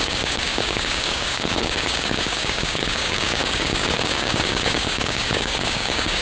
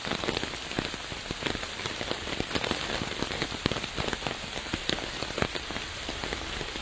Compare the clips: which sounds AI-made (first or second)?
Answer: first